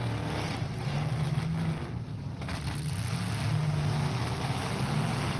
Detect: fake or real real